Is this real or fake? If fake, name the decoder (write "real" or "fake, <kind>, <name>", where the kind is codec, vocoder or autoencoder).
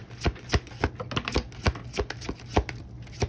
real